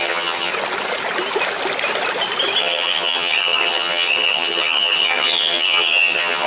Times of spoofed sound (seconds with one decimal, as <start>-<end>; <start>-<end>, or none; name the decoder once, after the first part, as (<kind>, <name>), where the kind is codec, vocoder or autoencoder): 0.0-0.5 (vocoder, HiFi-GAN); 2.6-6.5